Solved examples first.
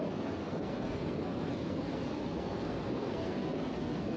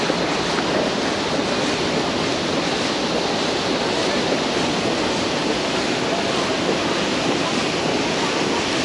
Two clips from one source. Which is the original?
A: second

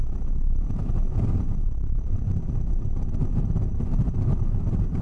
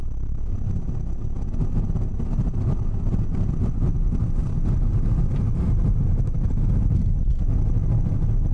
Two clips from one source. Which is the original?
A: second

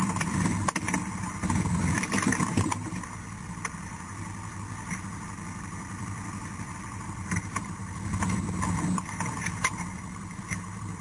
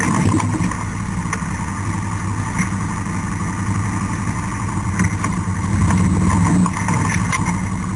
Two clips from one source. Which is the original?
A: second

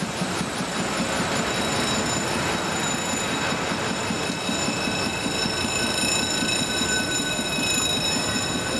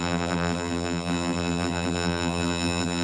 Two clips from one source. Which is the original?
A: first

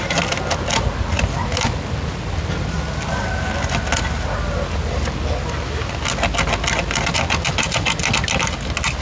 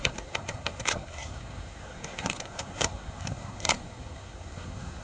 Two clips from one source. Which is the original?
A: first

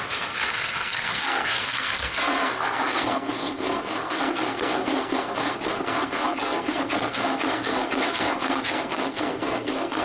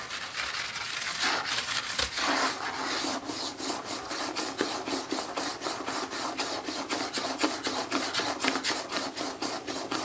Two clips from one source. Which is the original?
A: second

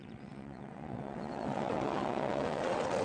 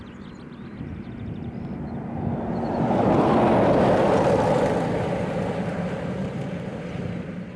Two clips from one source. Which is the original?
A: second